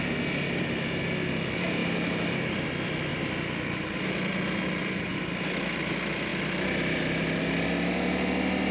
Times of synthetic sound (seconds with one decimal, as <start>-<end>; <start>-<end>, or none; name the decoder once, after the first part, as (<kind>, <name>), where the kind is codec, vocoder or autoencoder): none